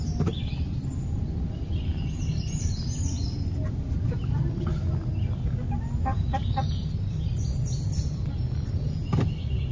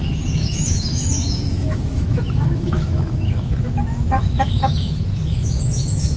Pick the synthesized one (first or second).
second